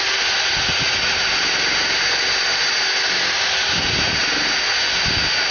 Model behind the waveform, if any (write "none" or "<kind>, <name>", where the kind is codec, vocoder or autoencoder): none